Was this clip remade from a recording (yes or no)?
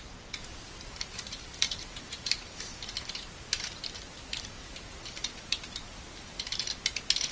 yes